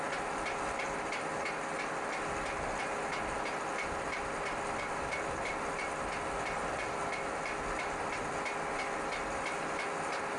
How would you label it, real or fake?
real